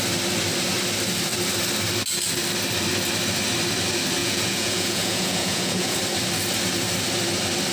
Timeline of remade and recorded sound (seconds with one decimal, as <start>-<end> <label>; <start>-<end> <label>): 0.0-4.2 recorded; 4.2-6.0 remade; 6.0-7.7 recorded